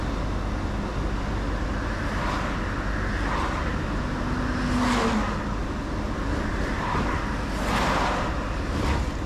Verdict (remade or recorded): recorded